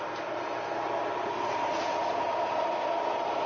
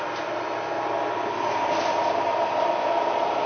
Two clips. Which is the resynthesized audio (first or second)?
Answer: first